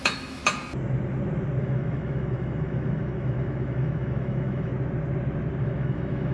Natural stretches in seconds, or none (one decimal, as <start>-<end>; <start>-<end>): 0.4-1.6; 4.7-5.6